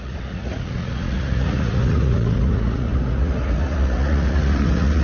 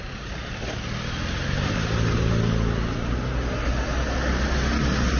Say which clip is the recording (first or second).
second